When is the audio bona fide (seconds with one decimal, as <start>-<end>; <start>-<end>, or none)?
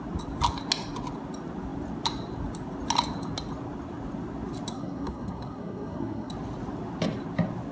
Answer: 0.0-4.7; 6.3-7.7